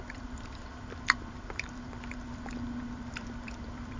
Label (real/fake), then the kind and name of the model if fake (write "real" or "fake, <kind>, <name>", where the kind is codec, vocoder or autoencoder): fake, vocoder, BigVGAN v2